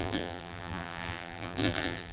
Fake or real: fake